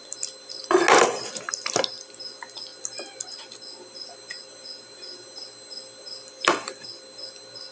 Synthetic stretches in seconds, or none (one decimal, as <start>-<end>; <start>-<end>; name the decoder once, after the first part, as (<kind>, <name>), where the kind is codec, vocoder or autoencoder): none